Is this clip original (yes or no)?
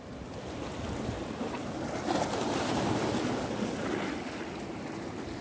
yes